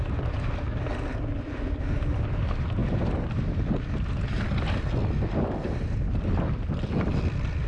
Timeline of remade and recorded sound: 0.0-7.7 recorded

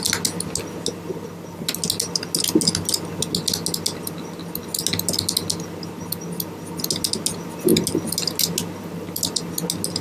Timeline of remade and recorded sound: 0.0-10.0 recorded

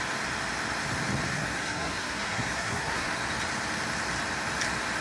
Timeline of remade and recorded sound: 0.0-1.3 recorded; 1.3-3.1 remade; 3.1-5.0 recorded